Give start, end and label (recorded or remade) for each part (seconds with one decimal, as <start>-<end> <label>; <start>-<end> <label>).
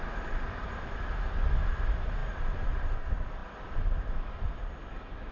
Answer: 0.0-5.3 recorded